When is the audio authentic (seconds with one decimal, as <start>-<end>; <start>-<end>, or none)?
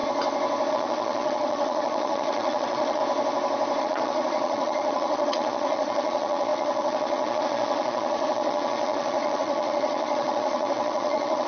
0.0-0.7; 3.0-3.8